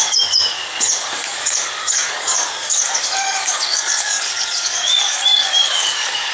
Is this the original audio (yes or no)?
no